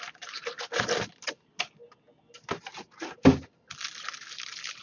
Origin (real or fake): real